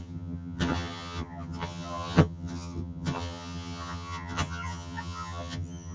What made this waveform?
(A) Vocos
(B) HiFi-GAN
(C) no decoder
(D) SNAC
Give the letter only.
B